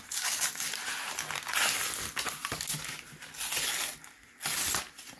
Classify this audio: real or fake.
real